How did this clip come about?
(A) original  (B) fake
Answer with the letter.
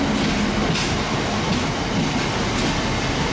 A